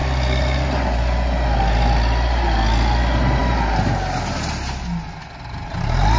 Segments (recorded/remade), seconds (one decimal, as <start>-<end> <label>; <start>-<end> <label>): 0.0-6.2 recorded

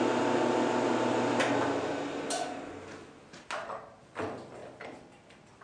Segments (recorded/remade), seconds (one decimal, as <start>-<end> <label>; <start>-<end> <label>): 0.0-5.6 recorded

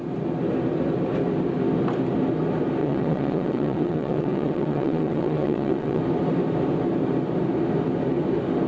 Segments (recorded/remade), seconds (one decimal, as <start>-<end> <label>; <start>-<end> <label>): 0.0-2.8 recorded; 2.8-6.0 remade; 6.0-8.7 recorded

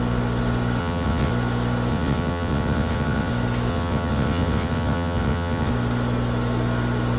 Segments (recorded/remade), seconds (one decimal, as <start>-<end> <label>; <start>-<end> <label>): 0.0-0.8 recorded; 0.8-1.3 remade; 1.3-1.9 recorded; 1.9-3.3 remade; 3.3-3.7 recorded; 3.7-5.7 remade; 5.7-7.2 recorded